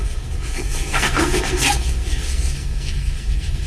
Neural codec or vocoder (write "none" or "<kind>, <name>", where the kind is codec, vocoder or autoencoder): codec, SNAC